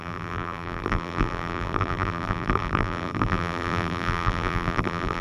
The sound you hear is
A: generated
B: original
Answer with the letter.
A